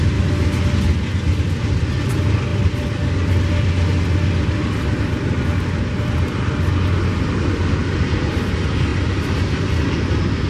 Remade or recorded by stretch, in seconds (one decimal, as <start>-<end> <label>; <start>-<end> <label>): 0.0-10.5 recorded